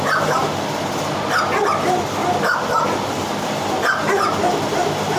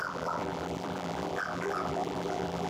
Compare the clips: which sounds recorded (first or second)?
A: first